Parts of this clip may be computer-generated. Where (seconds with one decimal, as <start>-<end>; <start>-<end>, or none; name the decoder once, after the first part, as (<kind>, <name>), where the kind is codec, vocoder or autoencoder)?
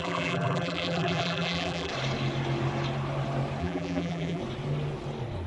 0.0-1.9 (vocoder, BigVGAN v2); 3.6-4.4